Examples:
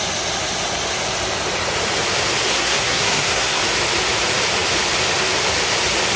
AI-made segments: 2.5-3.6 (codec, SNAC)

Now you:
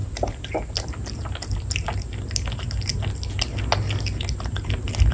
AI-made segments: none

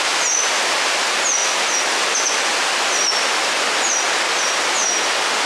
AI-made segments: none

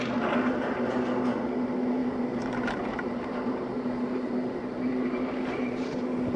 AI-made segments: 2.0-5.8 (vocoder, BigVGAN v2)

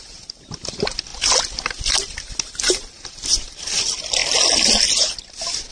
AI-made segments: none